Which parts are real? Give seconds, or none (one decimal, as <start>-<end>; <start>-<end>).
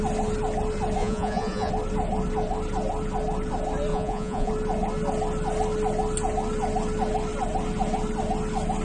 0.0-1.0; 1.7-3.9; 4.5-8.8